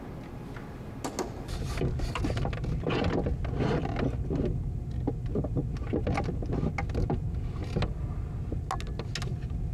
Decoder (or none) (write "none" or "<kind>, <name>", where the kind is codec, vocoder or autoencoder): none